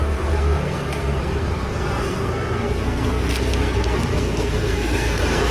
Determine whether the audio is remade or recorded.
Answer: remade